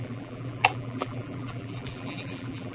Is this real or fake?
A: fake